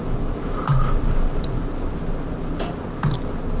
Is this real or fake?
real